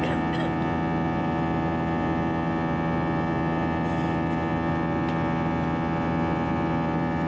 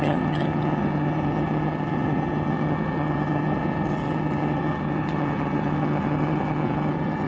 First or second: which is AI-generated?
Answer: second